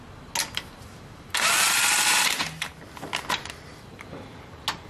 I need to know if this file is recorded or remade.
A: recorded